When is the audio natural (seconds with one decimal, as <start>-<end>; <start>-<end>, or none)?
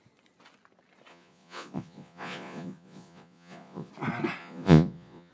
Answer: 0.0-1.1; 3.9-4.4